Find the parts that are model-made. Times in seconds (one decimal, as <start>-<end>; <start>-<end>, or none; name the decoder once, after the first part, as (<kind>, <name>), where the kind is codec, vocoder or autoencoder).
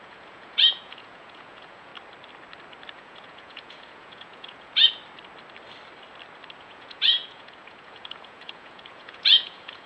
0.0-1.9 (vocoder, Vocos); 2.9-5.0; 6.6-9.9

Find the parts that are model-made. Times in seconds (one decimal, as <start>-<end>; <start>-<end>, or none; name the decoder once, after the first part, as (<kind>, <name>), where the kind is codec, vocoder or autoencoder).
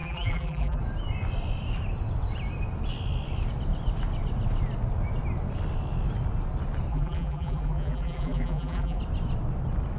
0.0-0.8 (vocoder, BigVGAN v2); 6.9-9.0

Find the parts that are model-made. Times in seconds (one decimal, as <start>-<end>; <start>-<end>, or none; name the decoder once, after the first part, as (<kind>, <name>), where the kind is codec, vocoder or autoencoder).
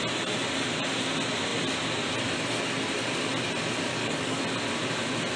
3.9-4.4 (codec, DAC)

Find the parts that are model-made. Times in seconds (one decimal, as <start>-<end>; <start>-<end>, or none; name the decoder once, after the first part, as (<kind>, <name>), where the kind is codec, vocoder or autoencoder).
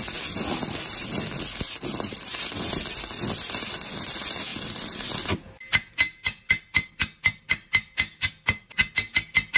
none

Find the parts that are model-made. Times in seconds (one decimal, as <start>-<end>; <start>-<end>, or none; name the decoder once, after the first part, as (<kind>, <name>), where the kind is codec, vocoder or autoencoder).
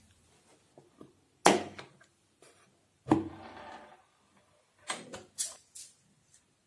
none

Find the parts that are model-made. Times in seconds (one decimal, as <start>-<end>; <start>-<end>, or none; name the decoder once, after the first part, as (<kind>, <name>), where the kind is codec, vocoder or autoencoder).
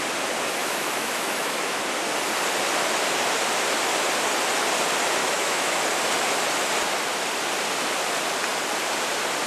0.6-1.8 (autoencoder, DAC-VAE); 5.2-5.8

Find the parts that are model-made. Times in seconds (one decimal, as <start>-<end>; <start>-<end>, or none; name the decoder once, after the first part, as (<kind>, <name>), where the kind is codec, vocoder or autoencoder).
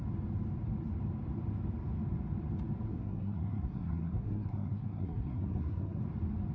2.9-6.0 (codec, SNAC)